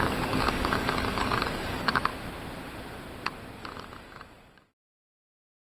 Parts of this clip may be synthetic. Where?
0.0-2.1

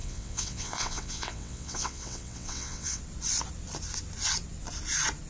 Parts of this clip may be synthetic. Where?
0.0-3.0

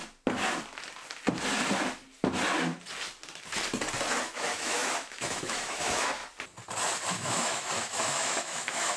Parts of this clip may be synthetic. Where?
4.2-6.2; 7.1-9.0

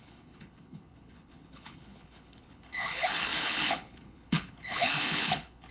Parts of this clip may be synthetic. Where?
0.0-5.7

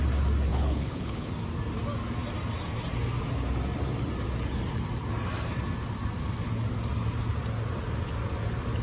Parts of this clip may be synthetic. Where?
0.5-1.3

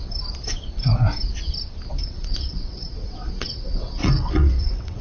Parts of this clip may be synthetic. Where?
2.0-5.0

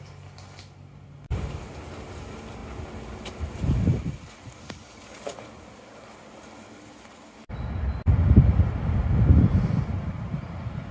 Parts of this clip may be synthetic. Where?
none